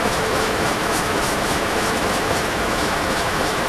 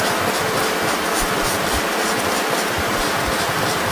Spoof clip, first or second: first